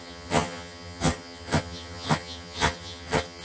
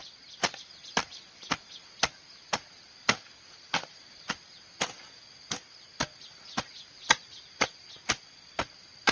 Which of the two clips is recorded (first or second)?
second